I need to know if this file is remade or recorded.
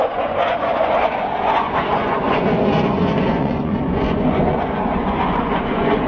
remade